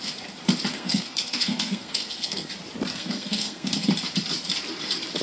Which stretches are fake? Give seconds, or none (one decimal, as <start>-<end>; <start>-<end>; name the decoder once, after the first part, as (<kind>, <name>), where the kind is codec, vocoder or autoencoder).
0.7-2.5 (codec, SNAC); 2.9-3.9